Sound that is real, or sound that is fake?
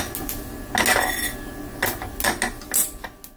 real